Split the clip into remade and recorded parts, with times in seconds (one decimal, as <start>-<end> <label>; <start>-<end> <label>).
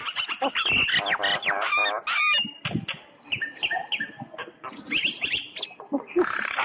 0.0-6.6 recorded